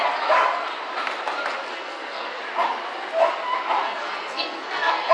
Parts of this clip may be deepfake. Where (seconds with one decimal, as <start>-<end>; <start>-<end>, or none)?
1.7-2.4; 3.8-5.1

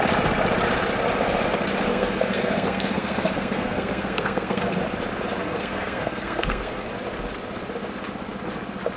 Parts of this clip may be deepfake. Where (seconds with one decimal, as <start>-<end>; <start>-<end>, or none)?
1.9-4.8; 5.4-6.9